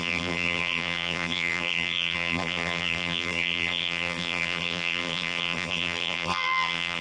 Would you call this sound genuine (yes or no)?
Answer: no